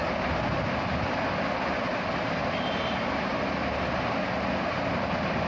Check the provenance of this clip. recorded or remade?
recorded